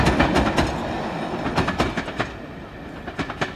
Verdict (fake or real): real